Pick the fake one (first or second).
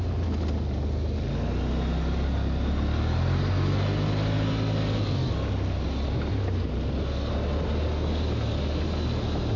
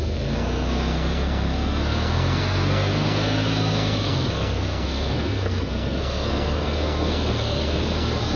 second